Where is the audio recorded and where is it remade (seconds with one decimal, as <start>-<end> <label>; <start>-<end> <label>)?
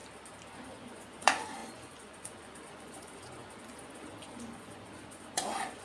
0.0-0.5 recorded; 0.5-5.8 remade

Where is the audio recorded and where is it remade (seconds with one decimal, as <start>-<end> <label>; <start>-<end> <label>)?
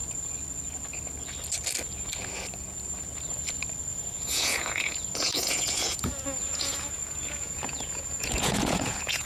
0.0-3.9 recorded; 3.9-9.3 remade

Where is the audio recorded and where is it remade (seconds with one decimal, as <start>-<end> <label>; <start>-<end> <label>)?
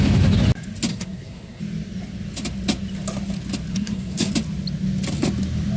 0.0-0.9 recorded; 0.9-1.6 remade; 1.6-3.7 recorded; 3.7-4.3 remade; 4.3-5.8 recorded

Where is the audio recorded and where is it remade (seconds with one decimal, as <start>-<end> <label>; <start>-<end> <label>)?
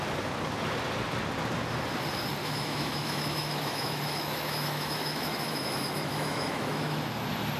0.0-2.4 recorded; 2.4-7.0 remade; 7.0-7.6 recorded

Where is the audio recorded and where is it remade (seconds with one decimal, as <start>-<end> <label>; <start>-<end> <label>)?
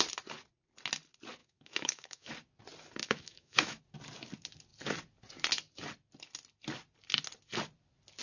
0.0-1.4 recorded; 1.4-2.3 remade; 2.3-3.0 recorded; 3.0-3.8 remade; 3.8-8.2 recorded